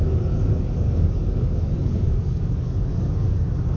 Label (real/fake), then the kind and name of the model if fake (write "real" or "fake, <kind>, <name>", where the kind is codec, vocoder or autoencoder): fake, codec, DAC